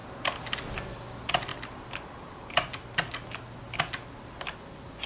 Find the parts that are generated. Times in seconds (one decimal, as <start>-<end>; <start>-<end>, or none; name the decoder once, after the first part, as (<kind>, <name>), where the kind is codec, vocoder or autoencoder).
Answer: none